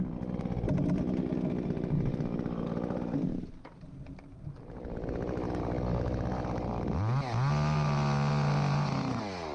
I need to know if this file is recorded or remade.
recorded